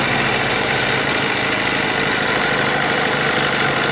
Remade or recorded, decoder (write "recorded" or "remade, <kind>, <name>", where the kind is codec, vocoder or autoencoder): recorded